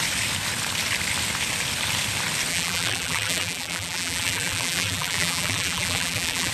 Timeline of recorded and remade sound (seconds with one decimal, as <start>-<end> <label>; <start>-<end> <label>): 0.0-2.5 recorded; 2.5-6.5 remade